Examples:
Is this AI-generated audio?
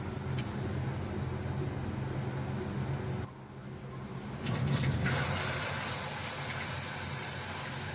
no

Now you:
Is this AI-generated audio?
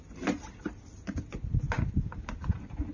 no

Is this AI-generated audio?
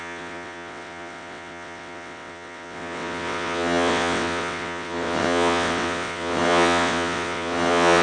yes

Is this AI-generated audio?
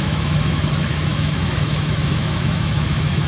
yes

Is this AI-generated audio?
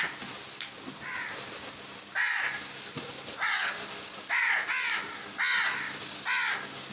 no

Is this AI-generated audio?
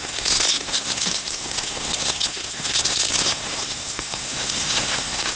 yes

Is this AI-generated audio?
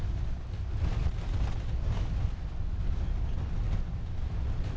no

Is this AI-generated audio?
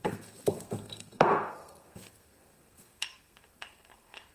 yes